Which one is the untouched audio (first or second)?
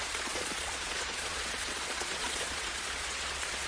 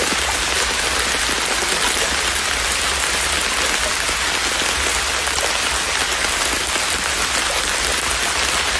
second